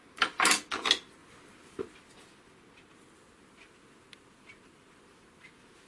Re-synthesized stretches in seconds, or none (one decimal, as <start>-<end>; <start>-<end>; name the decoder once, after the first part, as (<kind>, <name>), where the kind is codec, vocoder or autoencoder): none